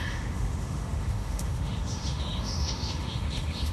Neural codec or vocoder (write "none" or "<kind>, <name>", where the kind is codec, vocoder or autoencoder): autoencoder, DAC-VAE